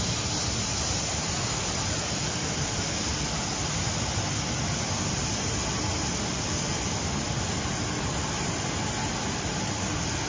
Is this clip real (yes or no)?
yes